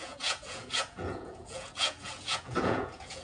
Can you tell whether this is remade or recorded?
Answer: remade